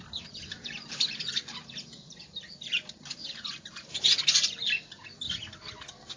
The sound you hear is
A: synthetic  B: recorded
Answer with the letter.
B